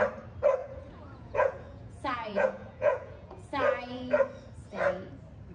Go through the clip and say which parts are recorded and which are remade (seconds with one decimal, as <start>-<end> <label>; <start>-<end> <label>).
0.0-0.6 recorded; 0.6-3.5 remade; 3.5-5.5 recorded